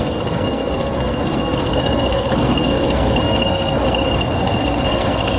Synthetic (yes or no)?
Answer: yes